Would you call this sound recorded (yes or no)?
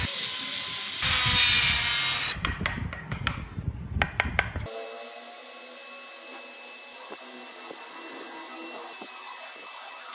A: yes